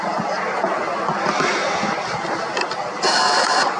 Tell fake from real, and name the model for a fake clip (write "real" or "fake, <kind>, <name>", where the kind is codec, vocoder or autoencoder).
real